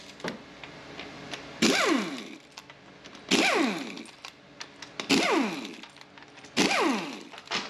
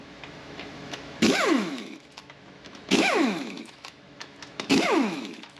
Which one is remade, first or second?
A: second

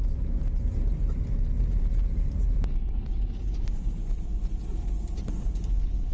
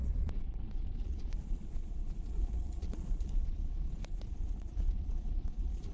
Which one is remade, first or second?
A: second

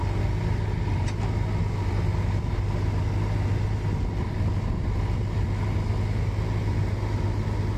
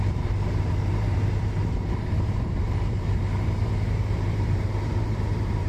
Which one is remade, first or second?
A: second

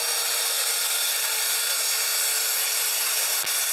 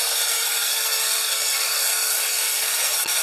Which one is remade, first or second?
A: second